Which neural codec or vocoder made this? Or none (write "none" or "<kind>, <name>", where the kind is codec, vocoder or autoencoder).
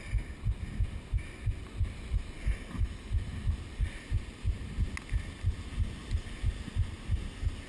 none